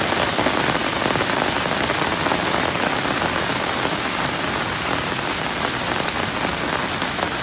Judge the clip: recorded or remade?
recorded